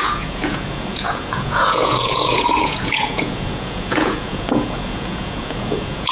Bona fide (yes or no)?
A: no